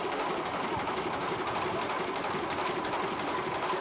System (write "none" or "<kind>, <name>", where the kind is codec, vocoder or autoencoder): none